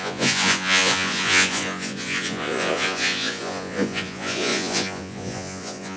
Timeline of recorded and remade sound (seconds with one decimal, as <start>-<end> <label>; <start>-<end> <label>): 0.0-6.0 remade